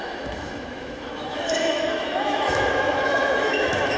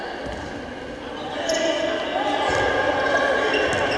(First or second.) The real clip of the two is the second